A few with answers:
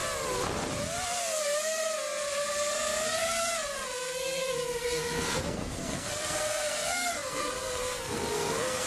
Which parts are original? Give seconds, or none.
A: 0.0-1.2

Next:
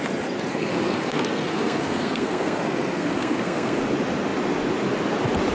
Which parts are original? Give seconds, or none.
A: 0.0-0.5; 3.8-5.5